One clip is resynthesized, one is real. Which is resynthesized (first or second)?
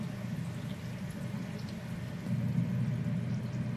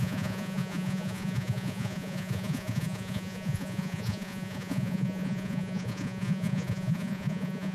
second